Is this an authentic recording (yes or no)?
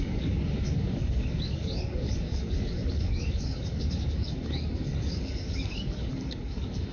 no